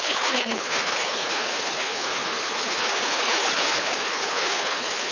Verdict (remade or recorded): remade